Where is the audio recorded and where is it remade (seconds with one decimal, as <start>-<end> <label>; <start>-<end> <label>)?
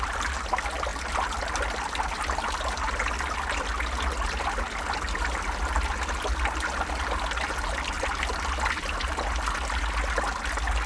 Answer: 0.0-10.9 recorded